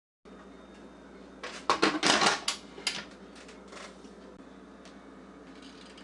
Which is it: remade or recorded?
recorded